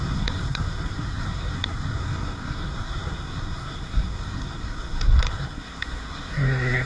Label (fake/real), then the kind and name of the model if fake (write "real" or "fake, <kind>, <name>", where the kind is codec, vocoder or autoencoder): fake, codec, SNAC